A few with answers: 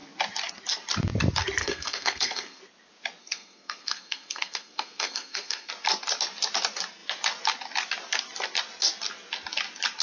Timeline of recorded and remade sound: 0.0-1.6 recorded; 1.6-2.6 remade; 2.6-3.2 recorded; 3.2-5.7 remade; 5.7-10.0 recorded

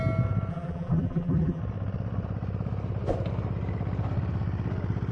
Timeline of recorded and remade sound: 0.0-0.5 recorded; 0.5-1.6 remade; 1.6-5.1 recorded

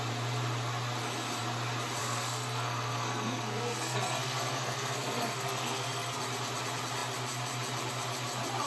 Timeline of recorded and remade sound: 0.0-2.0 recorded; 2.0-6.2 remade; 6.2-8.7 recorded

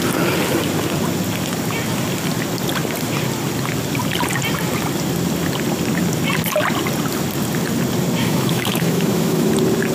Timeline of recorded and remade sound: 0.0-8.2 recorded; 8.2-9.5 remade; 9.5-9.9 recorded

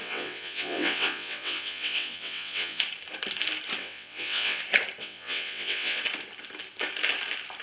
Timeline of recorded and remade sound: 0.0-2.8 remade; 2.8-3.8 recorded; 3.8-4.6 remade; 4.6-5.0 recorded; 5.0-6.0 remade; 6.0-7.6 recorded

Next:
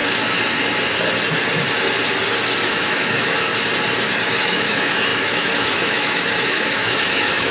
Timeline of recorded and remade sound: 0.0-2.7 recorded; 2.7-3.5 remade; 3.5-4.4 recorded; 4.4-7.5 remade

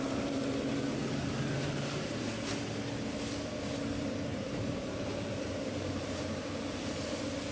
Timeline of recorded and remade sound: 0.0-1.0 recorded; 1.0-1.7 remade; 1.7-4.3 recorded; 4.3-7.1 remade; 7.1-7.5 recorded

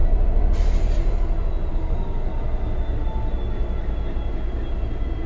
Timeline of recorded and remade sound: 0.0-1.7 recorded; 1.7-2.3 remade; 2.3-5.3 recorded